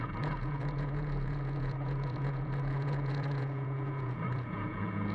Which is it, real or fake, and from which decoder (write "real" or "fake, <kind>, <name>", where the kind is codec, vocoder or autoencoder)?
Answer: fake, vocoder, Vocos